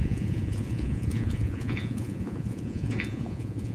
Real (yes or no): no